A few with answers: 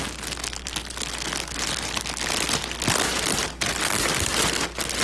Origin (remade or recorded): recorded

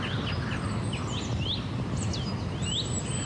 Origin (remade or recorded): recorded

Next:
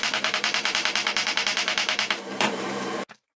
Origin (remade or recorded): remade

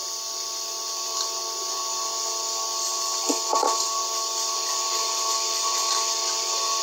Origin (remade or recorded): recorded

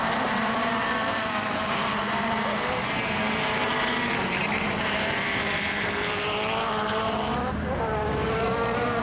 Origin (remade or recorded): remade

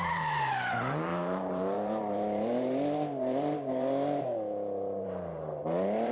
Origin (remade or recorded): remade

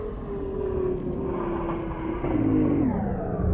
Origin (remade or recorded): recorded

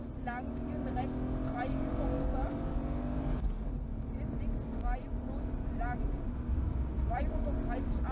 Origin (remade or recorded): remade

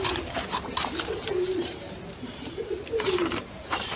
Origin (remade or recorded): remade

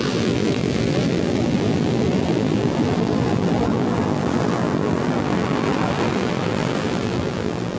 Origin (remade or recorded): remade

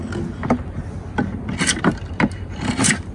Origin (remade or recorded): recorded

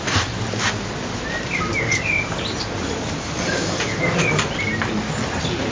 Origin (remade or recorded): recorded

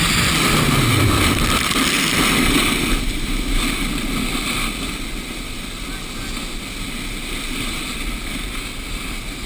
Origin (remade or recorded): recorded